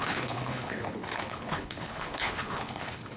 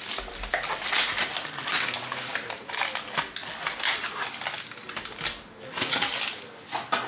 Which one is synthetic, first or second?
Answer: first